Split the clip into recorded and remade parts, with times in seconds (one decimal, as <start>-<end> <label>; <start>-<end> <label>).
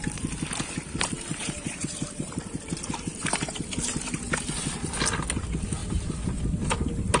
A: 0.0-1.3 recorded; 1.3-4.4 remade; 4.4-7.2 recorded